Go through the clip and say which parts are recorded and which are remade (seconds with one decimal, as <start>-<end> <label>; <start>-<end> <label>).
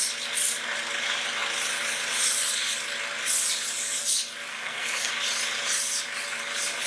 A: 0.0-4.5 recorded; 4.5-5.1 remade; 5.1-6.9 recorded